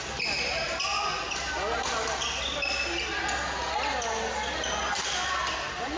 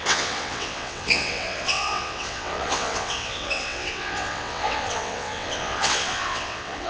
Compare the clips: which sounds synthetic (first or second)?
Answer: second